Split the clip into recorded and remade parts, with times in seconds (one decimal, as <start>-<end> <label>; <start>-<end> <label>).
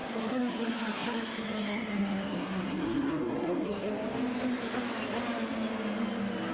0.0-3.9 remade; 3.9-6.5 recorded